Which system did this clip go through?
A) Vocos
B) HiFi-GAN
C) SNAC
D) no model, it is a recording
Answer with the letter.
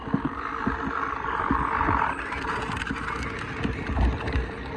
D